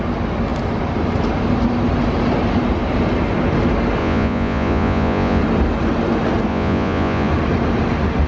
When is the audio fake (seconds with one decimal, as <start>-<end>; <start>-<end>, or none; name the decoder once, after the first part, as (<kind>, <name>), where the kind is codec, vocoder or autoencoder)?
4.0-5.4 (vocoder, Vocos); 6.5-7.3